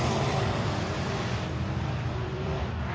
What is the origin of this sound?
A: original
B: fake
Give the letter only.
B